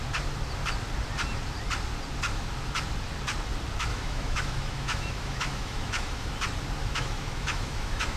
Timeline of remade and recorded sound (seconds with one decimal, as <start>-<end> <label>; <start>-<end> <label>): 0.0-3.9 recorded; 3.9-6.3 remade; 6.3-6.8 recorded; 6.8-8.2 remade